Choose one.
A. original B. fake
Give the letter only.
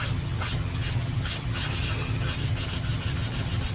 B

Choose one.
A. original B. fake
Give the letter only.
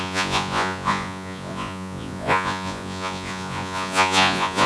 B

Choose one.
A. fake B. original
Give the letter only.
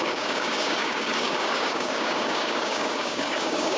A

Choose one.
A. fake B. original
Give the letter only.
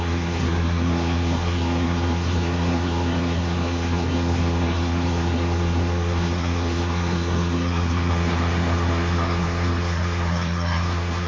A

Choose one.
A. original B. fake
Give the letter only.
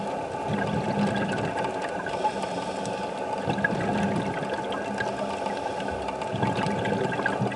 A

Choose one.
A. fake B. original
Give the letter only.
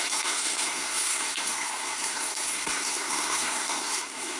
A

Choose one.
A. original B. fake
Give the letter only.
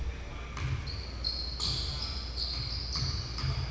A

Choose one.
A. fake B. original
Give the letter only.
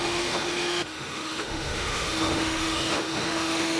A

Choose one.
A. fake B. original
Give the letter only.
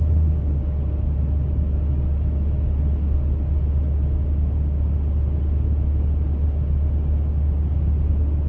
B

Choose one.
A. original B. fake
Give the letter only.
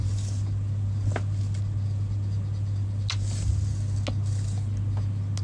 A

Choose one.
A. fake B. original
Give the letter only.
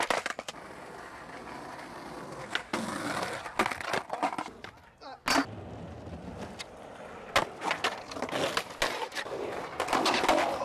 B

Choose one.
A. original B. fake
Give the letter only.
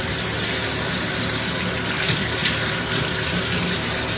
A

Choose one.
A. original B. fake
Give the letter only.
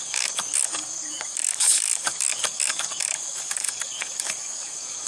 B